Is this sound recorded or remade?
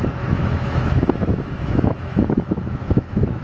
remade